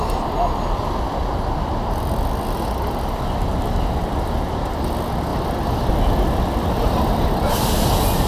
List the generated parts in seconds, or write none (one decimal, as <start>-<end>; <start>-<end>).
none